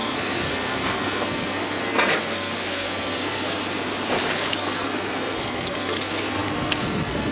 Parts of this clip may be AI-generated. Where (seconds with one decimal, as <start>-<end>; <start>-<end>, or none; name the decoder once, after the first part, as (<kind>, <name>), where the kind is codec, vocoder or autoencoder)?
0.0-3.6 (codec, SNAC); 4.5-7.3